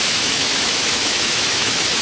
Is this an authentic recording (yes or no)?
no